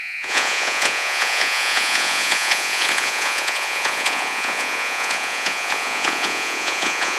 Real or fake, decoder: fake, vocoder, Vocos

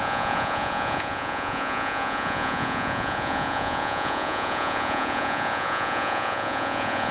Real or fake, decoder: fake, vocoder, Vocos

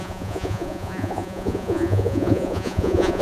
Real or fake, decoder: fake, vocoder, Vocos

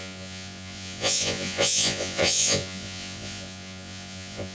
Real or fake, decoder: fake, vocoder, Vocos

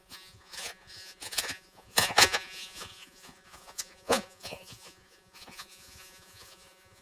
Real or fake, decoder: fake, vocoder, Vocos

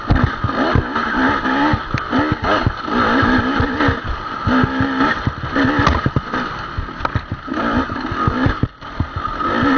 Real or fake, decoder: real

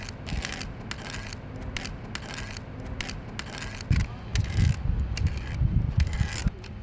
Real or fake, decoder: real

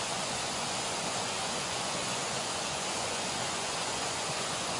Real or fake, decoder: fake, vocoder, Vocos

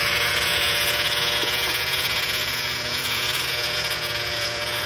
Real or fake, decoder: fake, vocoder, Vocos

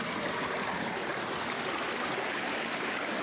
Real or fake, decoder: real